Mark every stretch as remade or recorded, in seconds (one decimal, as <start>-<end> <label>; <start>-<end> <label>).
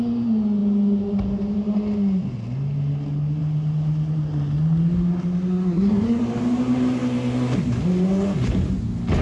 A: 0.0-5.5 recorded; 5.5-6.2 remade; 6.2-9.2 recorded